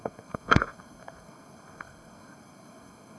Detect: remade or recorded remade